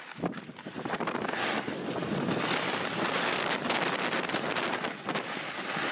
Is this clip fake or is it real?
real